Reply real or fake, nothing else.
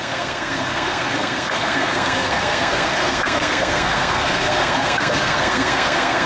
fake